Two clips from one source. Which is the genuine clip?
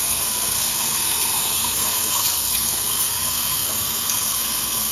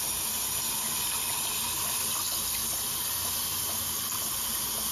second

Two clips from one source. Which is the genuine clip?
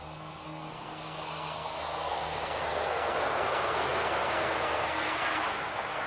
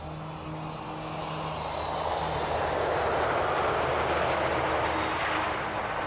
second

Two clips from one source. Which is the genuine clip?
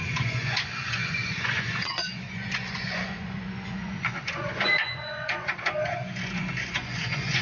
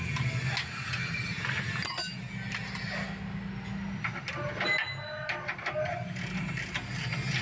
second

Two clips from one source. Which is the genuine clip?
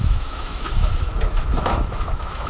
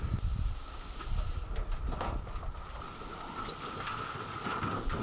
second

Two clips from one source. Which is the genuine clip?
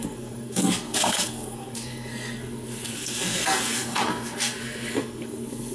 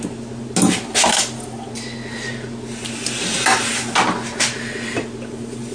second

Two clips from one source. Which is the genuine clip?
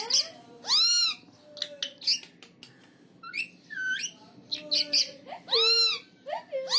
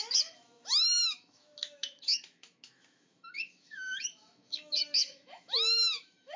first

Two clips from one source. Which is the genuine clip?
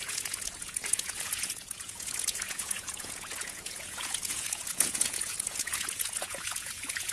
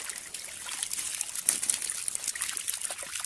second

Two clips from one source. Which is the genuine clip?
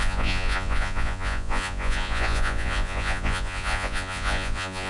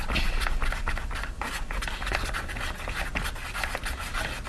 second